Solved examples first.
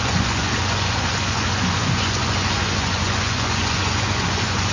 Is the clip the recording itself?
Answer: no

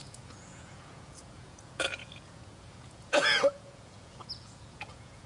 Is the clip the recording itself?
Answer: no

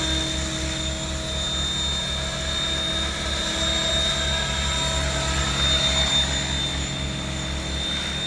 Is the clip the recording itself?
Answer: yes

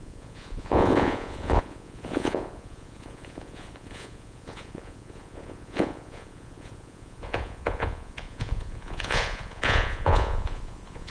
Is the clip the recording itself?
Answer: no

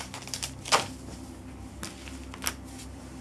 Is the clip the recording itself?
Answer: yes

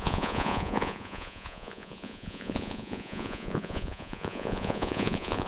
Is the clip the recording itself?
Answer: no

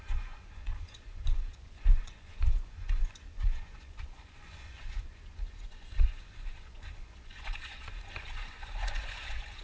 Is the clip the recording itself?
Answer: no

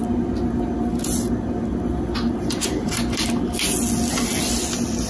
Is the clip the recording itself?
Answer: yes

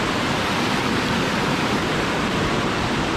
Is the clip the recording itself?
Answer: yes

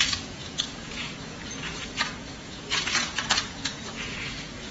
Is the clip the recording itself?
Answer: no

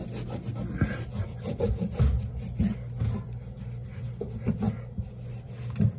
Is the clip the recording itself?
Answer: yes